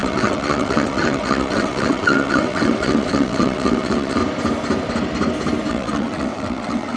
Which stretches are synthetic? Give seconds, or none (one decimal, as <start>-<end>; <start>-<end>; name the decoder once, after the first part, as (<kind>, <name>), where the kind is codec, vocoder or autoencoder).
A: 0.0-4.2 (vocoder, WaveNeXt); 5.7-7.0